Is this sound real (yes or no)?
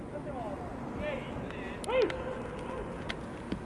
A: yes